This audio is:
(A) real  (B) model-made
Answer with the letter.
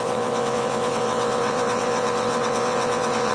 B